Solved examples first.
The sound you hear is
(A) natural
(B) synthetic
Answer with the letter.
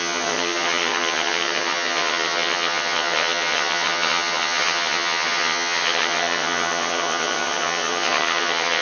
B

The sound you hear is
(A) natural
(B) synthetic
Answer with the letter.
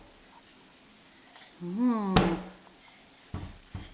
A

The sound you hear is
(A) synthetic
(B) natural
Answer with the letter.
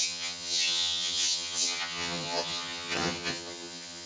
A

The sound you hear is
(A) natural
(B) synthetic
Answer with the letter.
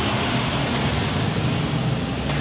A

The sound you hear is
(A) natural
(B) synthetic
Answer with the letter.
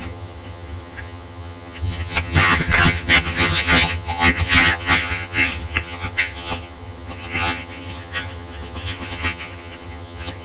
B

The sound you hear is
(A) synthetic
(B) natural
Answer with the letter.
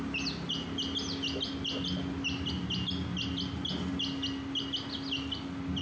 B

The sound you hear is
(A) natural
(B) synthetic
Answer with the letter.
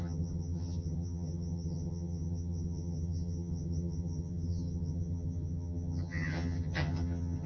B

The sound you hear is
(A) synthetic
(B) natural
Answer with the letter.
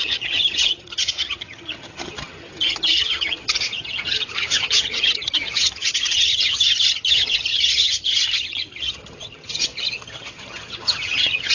A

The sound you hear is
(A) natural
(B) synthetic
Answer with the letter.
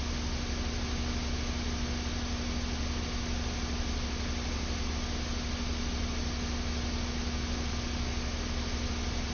A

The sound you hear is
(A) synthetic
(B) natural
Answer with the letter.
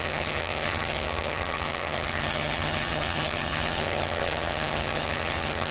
A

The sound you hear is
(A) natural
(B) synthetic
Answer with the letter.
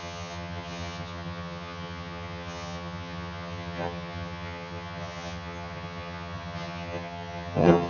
B